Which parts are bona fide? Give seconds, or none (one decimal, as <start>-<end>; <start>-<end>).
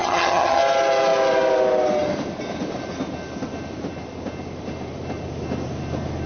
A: 0.6-6.3